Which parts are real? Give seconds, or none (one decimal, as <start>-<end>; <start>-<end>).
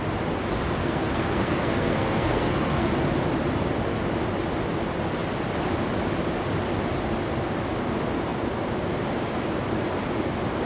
0.0-0.8; 2.9-10.7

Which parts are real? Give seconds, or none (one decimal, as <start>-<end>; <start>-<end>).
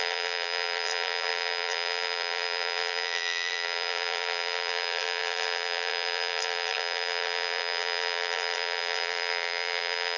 none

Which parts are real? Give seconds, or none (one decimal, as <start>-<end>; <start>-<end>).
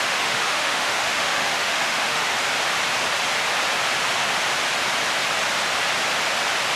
2.3-6.8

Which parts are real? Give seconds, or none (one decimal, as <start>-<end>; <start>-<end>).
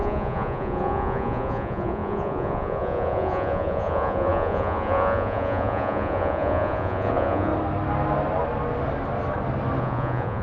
7.5-9.8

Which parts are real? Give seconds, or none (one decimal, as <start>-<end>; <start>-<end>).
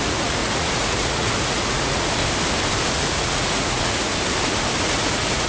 2.2-2.9; 4.1-4.8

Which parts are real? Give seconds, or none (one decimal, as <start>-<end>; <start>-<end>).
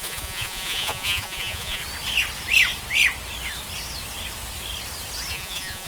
1.8-5.3